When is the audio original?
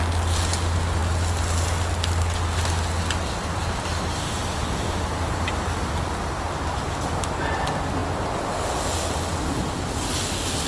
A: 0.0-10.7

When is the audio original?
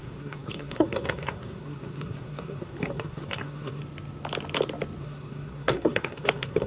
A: 3.8-5.0